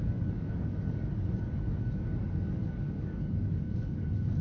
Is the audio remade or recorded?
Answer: remade